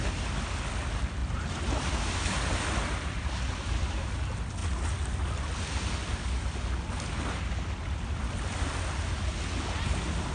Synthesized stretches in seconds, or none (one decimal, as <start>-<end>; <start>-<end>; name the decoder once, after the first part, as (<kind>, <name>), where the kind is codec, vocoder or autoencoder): 1.2-1.7 (vocoder, BigVGAN v2)